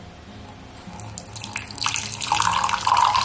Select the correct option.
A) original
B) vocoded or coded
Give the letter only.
A